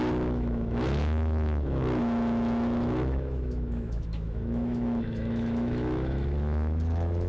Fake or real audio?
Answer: fake